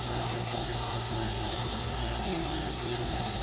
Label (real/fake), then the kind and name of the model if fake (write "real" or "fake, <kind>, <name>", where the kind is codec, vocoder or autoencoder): fake, codec, SNAC